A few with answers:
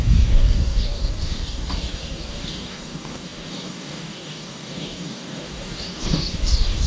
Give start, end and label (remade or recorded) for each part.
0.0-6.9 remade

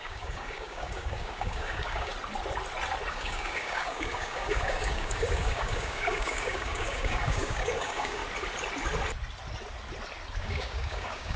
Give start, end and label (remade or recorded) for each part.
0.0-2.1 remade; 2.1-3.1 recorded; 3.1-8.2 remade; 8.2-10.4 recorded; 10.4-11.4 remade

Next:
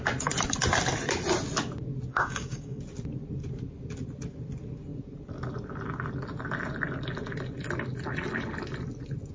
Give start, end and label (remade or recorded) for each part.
0.0-2.1 recorded; 2.1-2.8 remade; 2.8-9.3 recorded